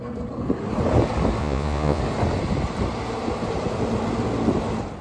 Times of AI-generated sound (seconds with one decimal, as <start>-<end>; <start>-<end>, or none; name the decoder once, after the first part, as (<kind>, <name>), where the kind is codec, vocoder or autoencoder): 1.4-2.0 (vocoder, Vocos)